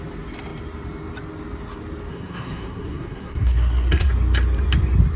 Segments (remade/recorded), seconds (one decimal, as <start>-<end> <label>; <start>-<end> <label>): 0.0-2.1 recorded; 2.1-4.1 remade; 4.1-5.2 recorded